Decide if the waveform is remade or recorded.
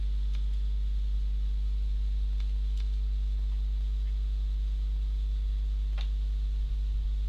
recorded